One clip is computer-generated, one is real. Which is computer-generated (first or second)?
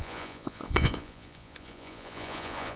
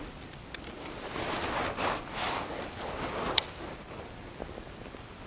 first